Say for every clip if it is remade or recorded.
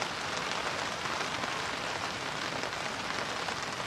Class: recorded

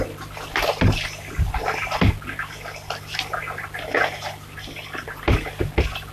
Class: recorded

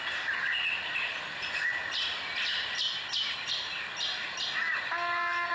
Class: recorded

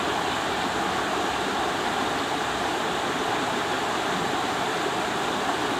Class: recorded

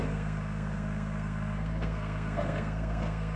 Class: remade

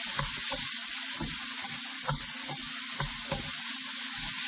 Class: recorded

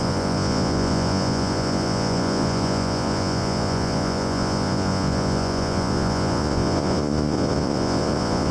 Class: remade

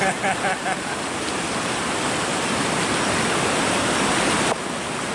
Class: recorded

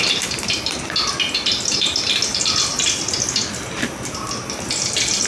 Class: recorded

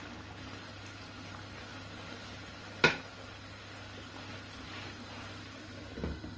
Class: recorded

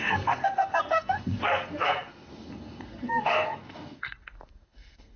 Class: remade